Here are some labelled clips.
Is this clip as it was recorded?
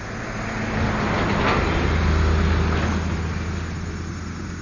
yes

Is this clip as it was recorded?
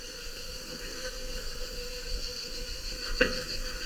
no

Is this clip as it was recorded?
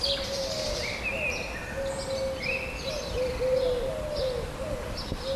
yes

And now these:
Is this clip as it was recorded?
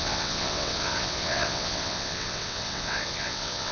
no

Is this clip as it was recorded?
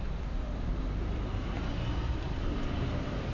no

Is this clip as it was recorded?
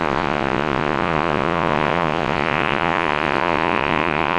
no